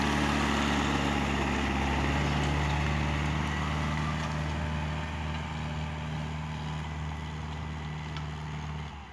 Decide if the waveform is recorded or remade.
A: recorded